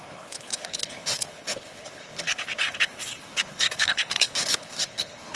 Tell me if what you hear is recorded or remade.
remade